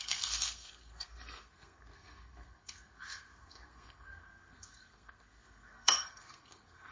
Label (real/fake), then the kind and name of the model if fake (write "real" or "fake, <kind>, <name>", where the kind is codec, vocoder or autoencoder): fake, codec, SNAC